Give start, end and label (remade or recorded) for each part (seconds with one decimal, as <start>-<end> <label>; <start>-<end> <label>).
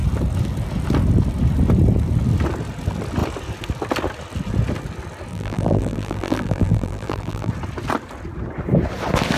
0.0-5.3 recorded; 5.3-7.5 remade; 7.5-9.4 recorded